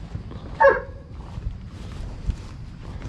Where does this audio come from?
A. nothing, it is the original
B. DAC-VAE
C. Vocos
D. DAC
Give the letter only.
A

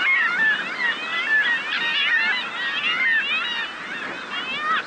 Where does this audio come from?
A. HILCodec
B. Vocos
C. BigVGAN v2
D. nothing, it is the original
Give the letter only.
D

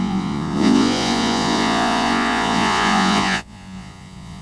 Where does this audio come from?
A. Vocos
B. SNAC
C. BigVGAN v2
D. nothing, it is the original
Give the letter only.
A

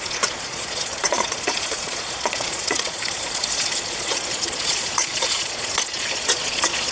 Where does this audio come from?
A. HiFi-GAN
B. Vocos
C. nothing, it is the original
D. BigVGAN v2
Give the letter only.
B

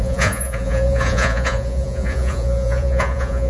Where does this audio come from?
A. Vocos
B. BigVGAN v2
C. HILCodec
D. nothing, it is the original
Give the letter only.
A